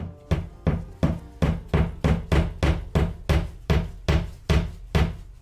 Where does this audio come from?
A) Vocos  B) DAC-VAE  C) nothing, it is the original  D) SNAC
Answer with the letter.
C